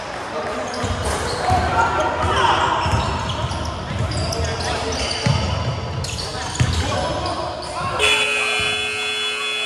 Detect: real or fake real